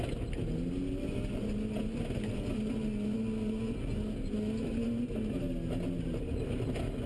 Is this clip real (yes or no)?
yes